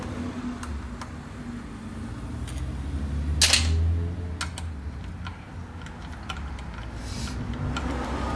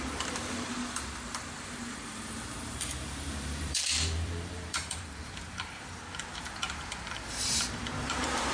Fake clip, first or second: second